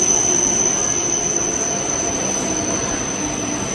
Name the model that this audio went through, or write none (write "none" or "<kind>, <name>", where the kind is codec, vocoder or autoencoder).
none